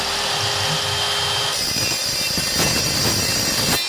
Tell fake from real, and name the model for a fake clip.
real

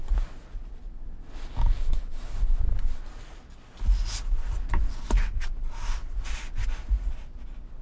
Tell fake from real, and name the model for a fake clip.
real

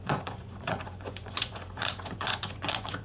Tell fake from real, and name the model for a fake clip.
fake, vocoder, Vocos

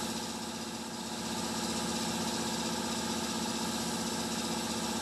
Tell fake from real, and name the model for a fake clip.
real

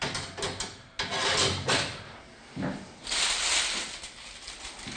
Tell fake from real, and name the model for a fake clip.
real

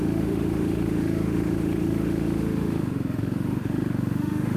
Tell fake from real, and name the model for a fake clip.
fake, autoencoder, DAC-VAE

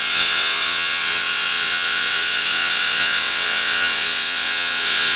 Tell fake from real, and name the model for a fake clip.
fake, vocoder, WaveNeXt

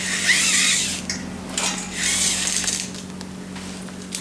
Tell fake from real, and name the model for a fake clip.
real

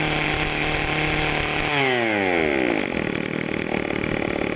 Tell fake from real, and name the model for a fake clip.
real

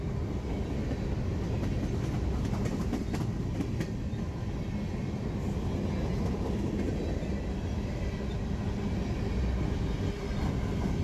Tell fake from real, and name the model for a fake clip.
real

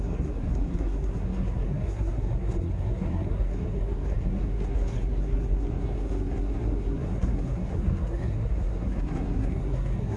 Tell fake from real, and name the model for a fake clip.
fake, codec, SNAC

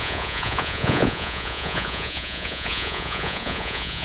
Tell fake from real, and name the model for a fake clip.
fake, vocoder, Vocos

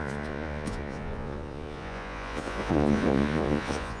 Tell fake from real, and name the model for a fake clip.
fake, vocoder, Vocos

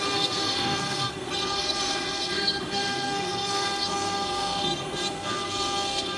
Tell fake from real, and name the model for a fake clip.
fake, codec, SNAC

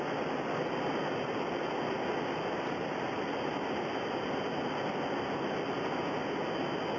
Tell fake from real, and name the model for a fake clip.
real